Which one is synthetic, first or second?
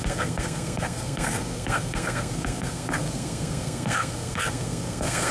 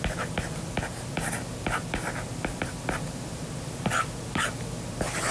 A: first